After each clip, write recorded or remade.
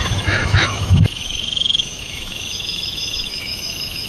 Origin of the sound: remade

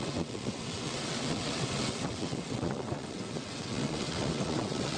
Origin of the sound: remade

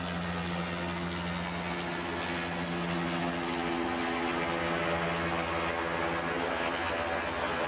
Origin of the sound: recorded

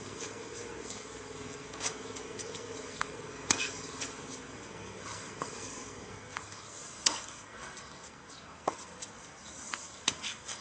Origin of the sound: remade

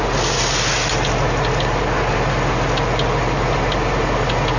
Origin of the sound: recorded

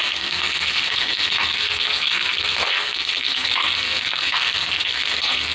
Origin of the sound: remade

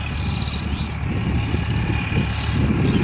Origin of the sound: recorded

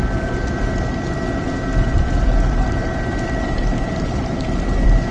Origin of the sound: remade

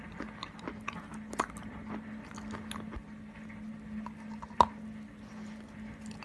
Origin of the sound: recorded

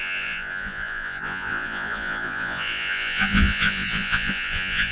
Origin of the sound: remade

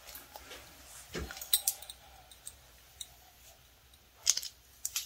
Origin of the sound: recorded